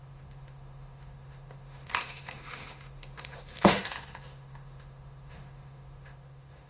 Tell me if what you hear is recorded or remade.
remade